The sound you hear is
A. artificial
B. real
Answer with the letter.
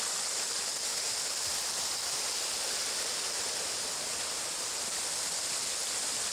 B